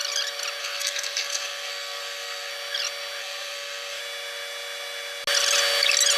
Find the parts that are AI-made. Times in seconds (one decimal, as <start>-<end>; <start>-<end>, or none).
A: 0.6-2.5; 3.2-4.0